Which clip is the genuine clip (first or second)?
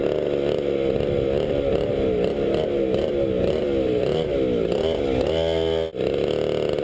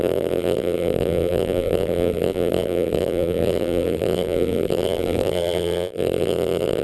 first